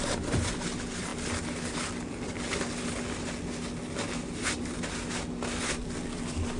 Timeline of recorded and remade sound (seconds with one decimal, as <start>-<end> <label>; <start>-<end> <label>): 0.0-6.6 recorded